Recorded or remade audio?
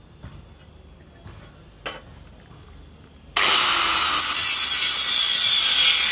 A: recorded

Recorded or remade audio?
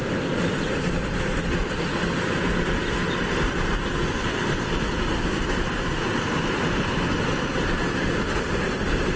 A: recorded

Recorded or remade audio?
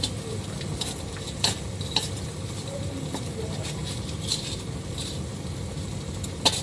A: recorded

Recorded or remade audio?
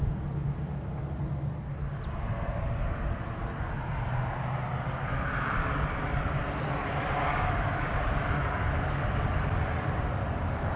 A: recorded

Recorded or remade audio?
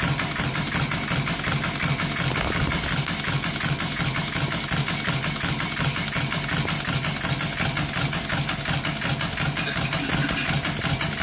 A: recorded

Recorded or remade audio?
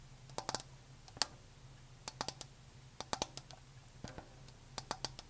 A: recorded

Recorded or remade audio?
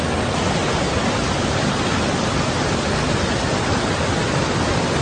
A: recorded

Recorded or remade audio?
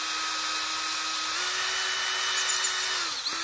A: recorded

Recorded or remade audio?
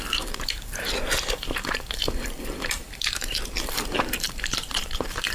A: remade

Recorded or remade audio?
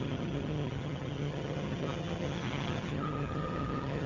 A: remade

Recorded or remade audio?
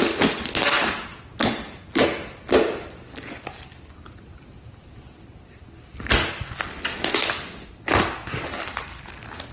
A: recorded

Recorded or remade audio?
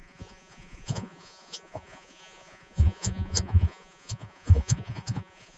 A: remade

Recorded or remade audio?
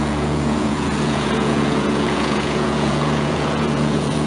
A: remade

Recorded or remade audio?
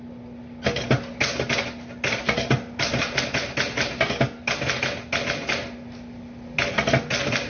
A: recorded